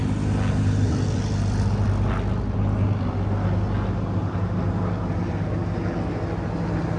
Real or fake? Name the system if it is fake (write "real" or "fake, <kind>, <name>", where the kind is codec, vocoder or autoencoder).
real